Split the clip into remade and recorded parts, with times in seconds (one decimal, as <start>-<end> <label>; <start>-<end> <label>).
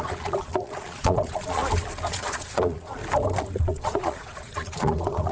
0.0-1.6 remade; 1.6-2.1 recorded; 2.1-3.0 remade; 3.0-3.6 recorded; 3.6-5.3 remade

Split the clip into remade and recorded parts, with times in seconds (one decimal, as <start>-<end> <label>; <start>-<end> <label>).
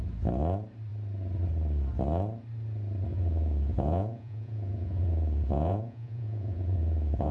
0.0-3.1 recorded; 3.1-7.3 remade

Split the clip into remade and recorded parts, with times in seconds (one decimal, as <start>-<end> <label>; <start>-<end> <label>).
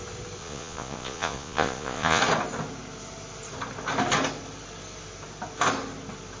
0.0-0.4 recorded; 0.4-2.2 remade; 2.2-6.4 recorded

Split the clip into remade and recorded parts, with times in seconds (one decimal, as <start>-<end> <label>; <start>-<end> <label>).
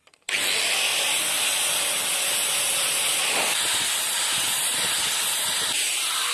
0.0-6.3 recorded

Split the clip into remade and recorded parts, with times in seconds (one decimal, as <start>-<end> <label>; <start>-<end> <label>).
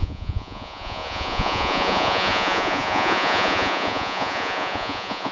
0.0-5.3 remade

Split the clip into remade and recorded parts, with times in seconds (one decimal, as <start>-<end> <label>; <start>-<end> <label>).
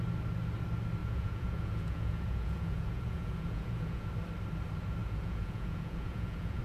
0.0-1.0 recorded; 1.0-4.1 remade; 4.1-5.0 recorded; 5.0-6.6 remade